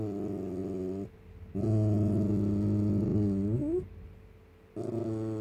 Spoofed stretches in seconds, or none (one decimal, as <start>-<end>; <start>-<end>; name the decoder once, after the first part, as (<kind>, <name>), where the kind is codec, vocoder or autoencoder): none